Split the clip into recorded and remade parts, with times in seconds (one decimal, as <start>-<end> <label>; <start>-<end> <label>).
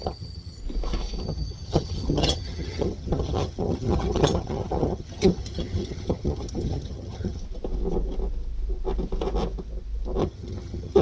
0.0-0.6 remade; 0.6-1.2 recorded; 1.2-7.4 remade; 7.4-10.2 recorded; 10.2-11.0 remade